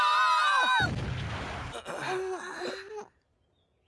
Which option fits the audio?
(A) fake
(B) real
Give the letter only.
B